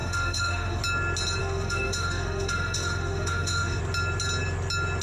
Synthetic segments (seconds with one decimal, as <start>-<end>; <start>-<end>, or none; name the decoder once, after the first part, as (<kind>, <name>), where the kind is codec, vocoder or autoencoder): 0.0-0.8 (autoencoder, DAC-VAE); 1.4-3.8